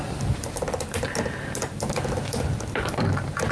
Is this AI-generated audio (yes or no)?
no